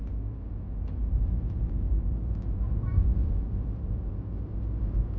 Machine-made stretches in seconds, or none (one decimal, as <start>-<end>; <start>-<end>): 1.0-4.1